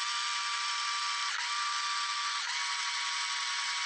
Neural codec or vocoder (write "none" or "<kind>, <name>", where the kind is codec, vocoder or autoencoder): none